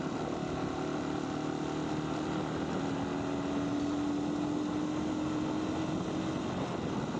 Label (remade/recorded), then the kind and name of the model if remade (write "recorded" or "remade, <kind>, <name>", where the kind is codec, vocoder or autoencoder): recorded